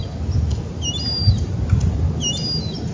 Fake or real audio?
real